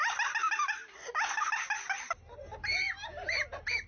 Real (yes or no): yes